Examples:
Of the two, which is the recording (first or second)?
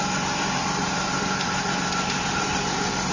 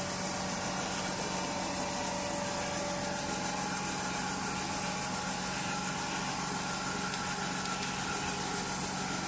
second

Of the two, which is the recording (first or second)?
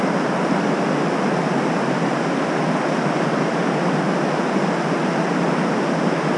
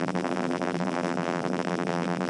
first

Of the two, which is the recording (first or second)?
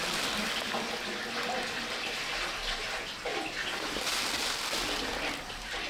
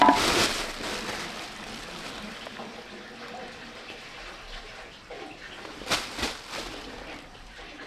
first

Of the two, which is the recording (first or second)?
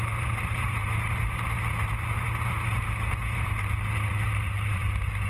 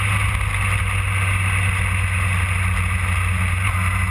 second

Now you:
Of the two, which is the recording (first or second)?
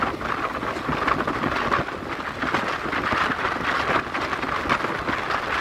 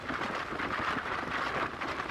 first